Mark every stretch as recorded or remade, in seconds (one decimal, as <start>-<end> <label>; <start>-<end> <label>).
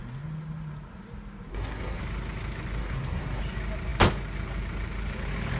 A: 0.0-1.5 recorded; 1.5-2.0 remade; 2.0-2.8 recorded; 2.8-3.4 remade; 3.4-5.6 recorded